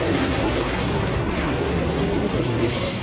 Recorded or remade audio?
remade